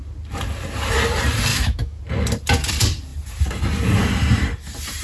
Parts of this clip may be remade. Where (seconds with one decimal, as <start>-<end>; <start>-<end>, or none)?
1.5-2.0